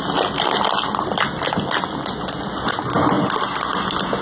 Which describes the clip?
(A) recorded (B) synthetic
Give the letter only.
A